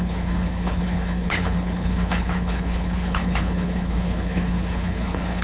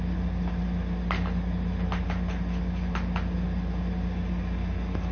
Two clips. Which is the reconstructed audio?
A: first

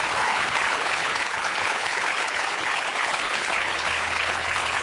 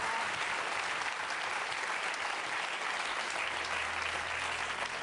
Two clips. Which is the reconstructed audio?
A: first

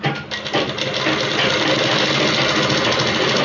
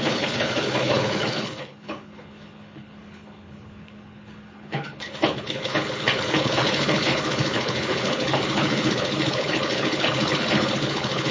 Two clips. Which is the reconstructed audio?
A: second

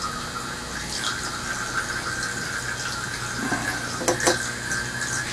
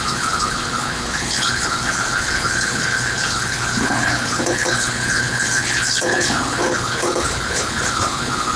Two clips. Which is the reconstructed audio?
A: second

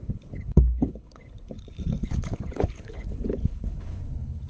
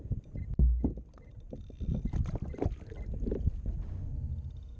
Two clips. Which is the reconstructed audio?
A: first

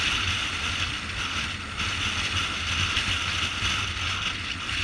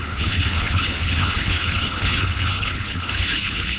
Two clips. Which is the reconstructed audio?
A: second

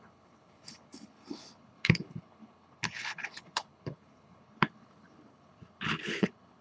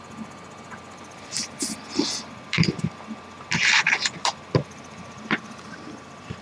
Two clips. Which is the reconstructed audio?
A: first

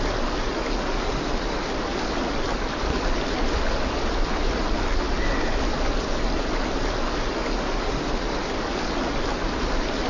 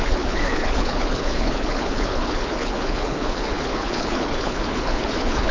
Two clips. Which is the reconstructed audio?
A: second